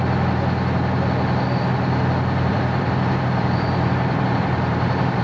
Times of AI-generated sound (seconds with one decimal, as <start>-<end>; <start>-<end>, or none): 2.5-5.2